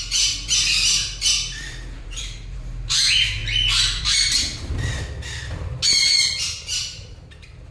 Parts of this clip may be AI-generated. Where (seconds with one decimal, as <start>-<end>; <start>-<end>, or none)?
0.0-3.4; 4.0-4.5; 6.4-7.7